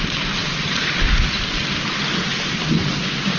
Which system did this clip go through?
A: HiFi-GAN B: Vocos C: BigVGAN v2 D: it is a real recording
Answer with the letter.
D